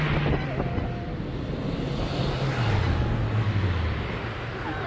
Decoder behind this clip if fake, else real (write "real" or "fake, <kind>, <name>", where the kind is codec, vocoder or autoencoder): real